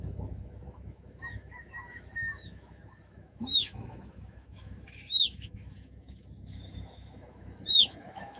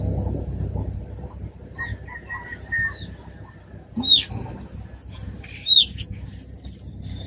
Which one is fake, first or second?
first